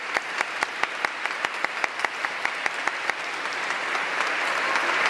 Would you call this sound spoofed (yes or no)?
yes